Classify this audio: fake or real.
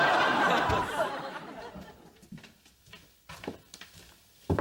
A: real